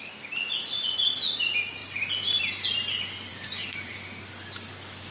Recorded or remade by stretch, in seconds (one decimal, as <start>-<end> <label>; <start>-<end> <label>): 0.0-3.3 recorded; 3.3-3.9 remade; 3.9-5.1 recorded